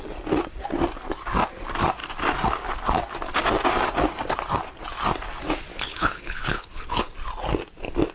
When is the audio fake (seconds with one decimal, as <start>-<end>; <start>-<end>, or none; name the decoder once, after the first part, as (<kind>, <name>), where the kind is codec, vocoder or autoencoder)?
5.7-7.0 (codec, HILCodec)